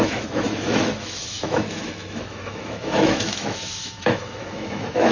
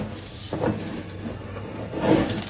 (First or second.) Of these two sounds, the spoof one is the first